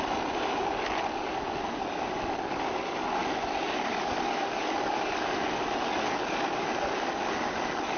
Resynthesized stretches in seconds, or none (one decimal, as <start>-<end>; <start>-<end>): none